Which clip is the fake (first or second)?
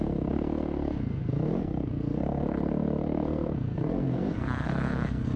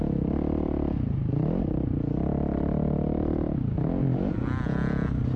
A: first